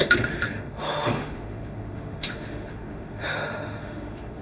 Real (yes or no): no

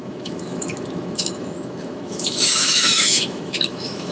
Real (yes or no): no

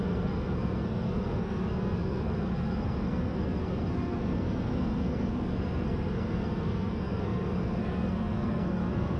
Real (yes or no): no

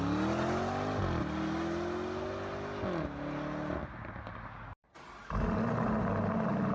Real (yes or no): yes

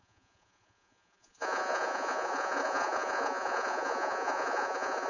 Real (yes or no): no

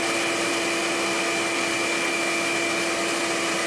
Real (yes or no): yes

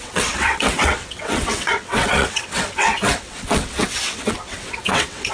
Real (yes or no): no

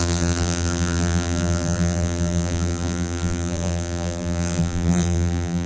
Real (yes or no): no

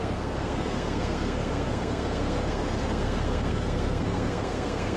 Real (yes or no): no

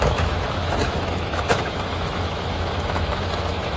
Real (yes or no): no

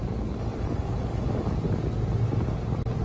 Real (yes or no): yes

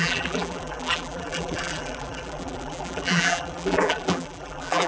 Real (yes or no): no